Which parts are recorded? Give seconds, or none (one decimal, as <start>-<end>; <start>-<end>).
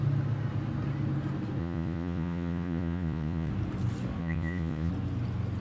0.0-1.6; 3.5-4.2; 4.9-5.6